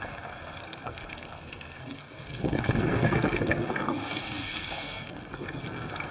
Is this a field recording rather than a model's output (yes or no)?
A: no